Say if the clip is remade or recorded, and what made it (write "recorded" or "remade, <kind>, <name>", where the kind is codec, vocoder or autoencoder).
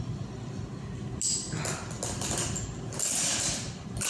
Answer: recorded